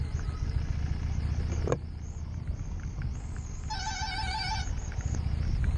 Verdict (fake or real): real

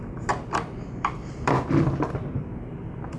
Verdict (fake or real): real